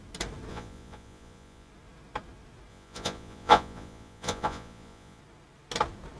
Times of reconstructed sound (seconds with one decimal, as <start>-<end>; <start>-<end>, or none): 0.5-1.7; 2.7-5.2